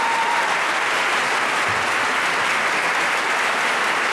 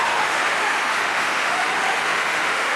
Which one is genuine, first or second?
first